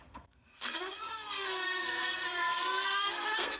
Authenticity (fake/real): fake